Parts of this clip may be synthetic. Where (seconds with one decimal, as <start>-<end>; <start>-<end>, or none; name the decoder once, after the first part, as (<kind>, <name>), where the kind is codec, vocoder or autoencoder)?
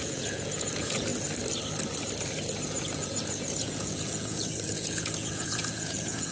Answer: 0.0-1.1 (vocoder, Vocos); 2.8-6.3